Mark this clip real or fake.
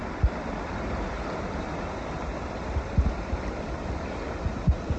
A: real